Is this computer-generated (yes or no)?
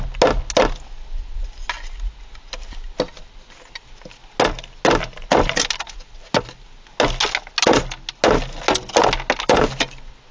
no